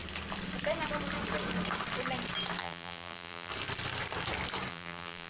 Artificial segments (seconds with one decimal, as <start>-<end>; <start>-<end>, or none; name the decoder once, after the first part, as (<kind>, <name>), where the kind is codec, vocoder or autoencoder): 2.6-3.5 (vocoder, BigVGAN v2); 4.7-5.3